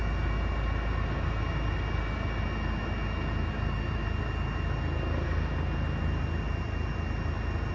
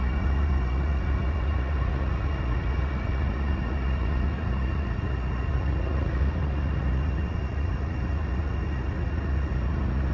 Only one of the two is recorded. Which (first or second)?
first